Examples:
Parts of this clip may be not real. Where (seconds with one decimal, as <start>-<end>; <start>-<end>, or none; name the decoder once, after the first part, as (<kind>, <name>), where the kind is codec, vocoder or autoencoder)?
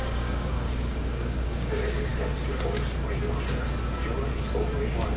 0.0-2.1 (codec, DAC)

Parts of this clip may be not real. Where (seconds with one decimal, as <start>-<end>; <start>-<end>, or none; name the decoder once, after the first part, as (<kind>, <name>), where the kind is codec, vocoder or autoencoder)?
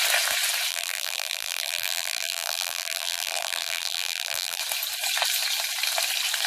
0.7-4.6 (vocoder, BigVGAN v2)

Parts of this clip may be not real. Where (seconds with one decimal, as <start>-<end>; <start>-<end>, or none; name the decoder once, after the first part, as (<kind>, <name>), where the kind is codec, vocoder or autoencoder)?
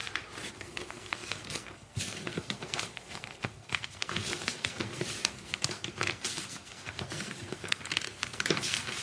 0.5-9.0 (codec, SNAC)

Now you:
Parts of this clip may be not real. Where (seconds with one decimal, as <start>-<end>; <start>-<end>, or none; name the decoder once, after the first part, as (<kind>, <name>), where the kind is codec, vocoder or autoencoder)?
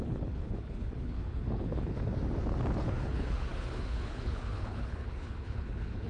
0.0-2.1 (codec, HILCodec); 2.9-6.1